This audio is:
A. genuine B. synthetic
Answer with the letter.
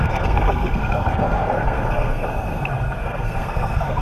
B